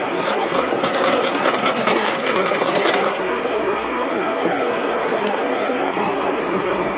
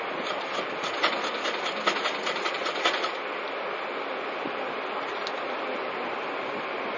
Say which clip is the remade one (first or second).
first